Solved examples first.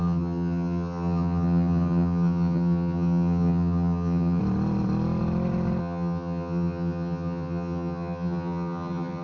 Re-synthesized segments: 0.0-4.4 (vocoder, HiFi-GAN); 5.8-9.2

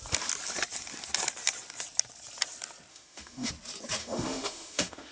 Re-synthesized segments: 2.9-3.5 (autoencoder, DAC-VAE); 4.0-5.1